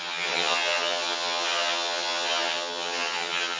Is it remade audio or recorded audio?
remade